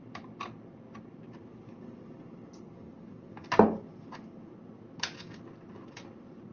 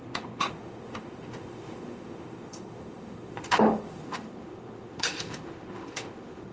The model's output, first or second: second